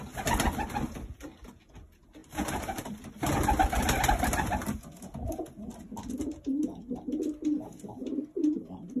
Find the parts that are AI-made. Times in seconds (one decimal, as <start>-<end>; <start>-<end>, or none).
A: none

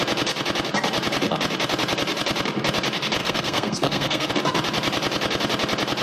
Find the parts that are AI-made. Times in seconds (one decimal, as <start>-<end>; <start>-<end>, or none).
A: 3.2-4.3

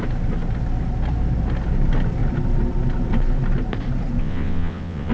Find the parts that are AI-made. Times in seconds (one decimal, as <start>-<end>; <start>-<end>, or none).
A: 4.2-5.1

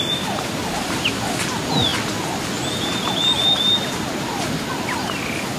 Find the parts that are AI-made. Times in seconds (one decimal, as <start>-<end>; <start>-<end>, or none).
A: 0.0-1.9

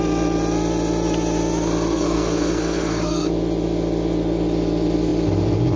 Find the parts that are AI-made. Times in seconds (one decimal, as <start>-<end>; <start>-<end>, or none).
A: 1.9-3.3